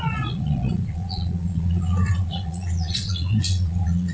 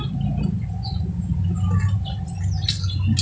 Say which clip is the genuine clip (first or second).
second